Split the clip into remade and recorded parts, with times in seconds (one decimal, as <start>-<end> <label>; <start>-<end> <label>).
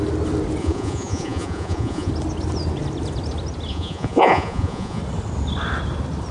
0.0-0.6 recorded; 0.6-2.1 remade; 2.1-3.7 recorded; 3.7-5.0 remade; 5.0-6.3 recorded